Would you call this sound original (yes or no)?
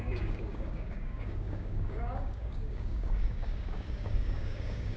no